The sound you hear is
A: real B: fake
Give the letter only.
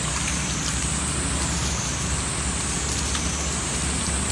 A